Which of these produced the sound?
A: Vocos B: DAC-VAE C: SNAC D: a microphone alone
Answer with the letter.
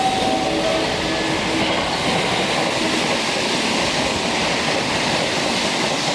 D